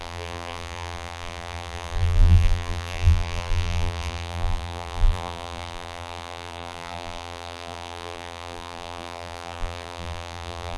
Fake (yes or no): yes